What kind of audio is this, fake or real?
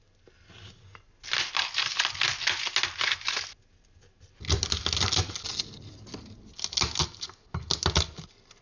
real